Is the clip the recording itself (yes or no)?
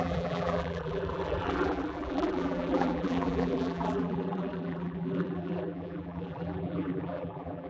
no